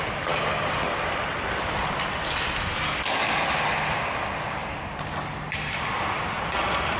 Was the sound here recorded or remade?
recorded